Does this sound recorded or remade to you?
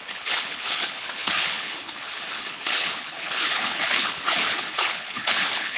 remade